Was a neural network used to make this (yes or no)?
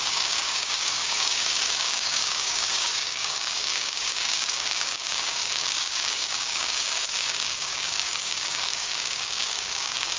yes